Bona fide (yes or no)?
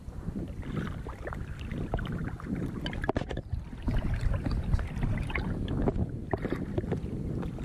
yes